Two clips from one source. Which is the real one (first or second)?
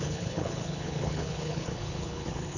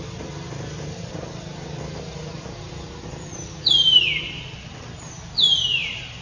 second